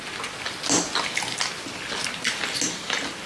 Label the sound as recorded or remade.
recorded